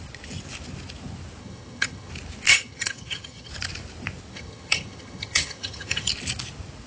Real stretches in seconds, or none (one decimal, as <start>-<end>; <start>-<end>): 0.0-1.4; 2.1-2.5; 3.5-4.3; 6.1-6.9